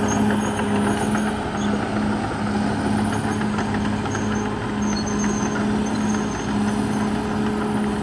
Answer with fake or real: real